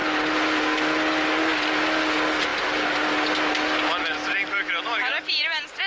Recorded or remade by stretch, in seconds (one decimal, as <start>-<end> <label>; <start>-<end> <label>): 0.0-5.9 recorded